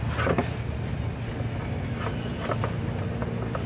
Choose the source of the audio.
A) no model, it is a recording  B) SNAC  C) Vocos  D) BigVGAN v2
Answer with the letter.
A